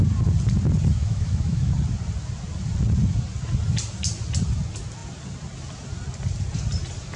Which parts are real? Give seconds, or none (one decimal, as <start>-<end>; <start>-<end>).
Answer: 0.0-1.0; 1.7-7.2